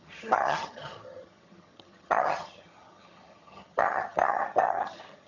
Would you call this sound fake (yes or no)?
yes